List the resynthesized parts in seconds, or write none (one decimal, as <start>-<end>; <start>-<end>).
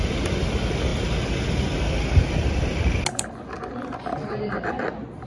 none